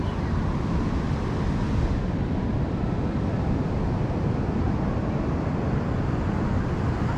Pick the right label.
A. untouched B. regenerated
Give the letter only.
A